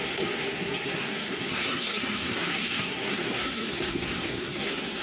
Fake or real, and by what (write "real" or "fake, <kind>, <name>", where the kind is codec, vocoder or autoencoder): fake, codec, SNAC